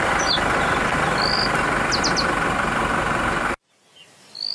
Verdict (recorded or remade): recorded